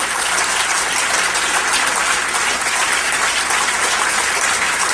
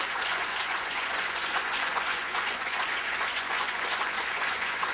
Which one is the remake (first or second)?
second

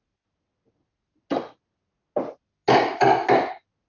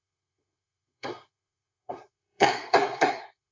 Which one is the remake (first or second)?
second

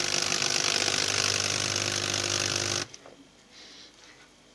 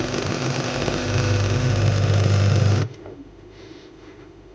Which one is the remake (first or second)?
second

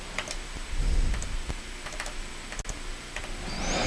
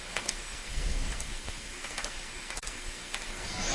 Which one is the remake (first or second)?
second